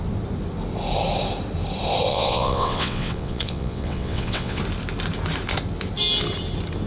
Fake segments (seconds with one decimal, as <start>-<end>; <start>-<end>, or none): 2.1-4.6